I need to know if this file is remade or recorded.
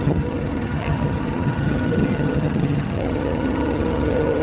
remade